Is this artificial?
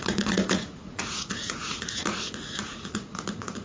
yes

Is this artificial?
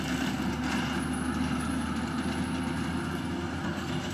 no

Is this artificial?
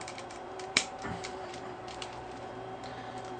yes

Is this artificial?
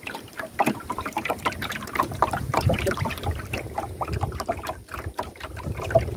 yes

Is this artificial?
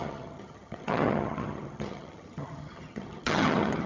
yes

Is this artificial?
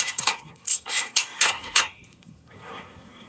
yes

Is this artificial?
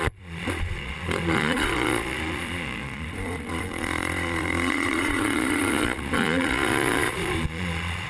yes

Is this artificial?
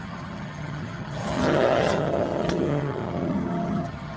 yes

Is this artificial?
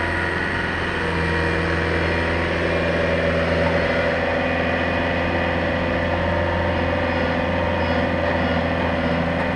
no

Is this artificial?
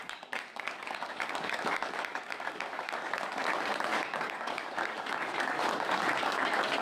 yes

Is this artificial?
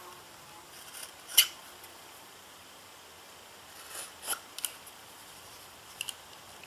no